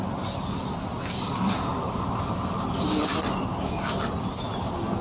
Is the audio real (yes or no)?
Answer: yes